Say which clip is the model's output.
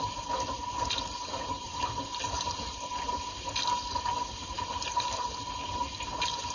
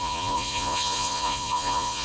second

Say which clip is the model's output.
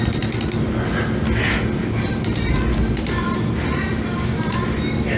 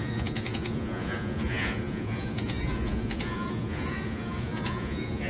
second